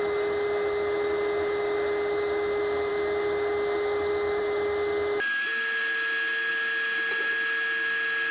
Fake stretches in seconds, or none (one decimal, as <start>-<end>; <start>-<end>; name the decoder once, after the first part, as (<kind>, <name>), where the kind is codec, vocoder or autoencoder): none